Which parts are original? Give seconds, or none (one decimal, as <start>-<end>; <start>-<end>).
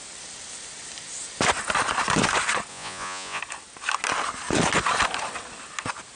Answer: 0.0-2.7; 3.4-6.2